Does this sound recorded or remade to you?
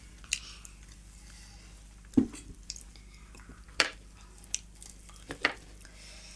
remade